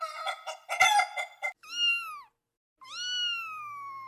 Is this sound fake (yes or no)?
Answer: no